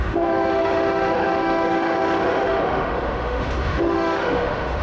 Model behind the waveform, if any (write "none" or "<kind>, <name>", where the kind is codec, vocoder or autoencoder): autoencoder, DAC-VAE